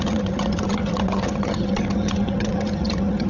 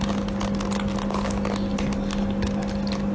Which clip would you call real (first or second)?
second